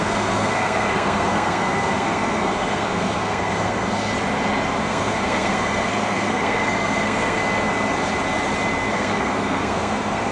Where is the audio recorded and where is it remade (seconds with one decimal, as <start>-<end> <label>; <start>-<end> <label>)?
0.0-4.1 remade; 4.1-4.8 recorded; 4.8-7.4 remade; 7.4-8.9 recorded; 8.9-10.3 remade